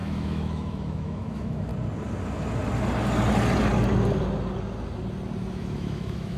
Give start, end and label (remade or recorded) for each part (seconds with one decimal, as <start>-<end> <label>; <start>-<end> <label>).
0.0-1.7 remade; 1.7-5.5 recorded; 5.5-6.4 remade